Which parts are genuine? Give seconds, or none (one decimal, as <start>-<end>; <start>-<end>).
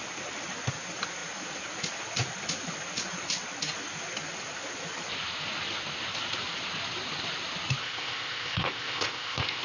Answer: 0.0-7.8